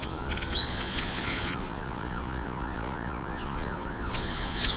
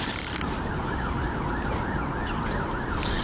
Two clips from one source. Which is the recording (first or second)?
second